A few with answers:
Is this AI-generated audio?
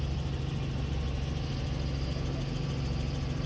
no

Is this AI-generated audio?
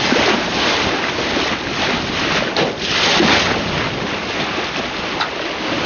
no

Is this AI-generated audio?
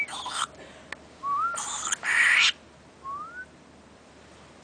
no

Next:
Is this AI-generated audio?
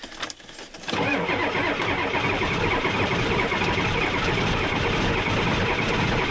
no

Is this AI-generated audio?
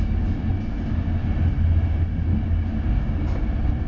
no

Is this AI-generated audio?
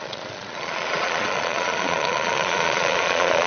yes